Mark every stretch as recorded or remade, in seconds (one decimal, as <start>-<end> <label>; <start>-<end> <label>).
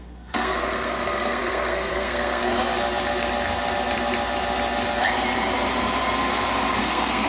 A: 0.0-2.4 remade; 2.4-6.8 recorded; 6.8-7.3 remade